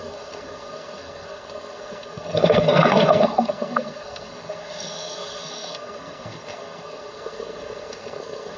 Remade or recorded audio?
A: remade